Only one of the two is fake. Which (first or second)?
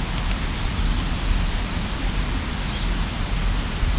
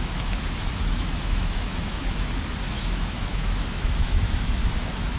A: second